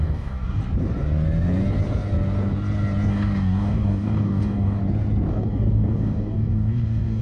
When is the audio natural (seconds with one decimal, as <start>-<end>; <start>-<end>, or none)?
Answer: 0.6-3.1; 4.8-5.3